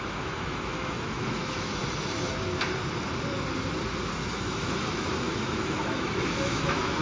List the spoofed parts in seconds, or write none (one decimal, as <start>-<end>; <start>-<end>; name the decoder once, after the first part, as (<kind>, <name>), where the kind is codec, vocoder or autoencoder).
0.0-1.8 (autoencoder, DAC-VAE); 4.3-7.0